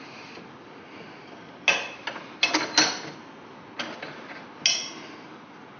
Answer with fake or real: real